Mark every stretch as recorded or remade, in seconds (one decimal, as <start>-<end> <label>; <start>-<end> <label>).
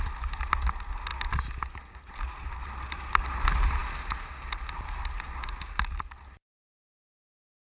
0.0-7.7 recorded